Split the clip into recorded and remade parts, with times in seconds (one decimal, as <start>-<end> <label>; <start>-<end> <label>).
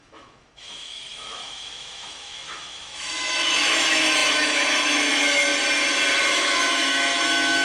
0.0-5.5 remade; 5.5-6.3 recorded; 6.3-7.6 remade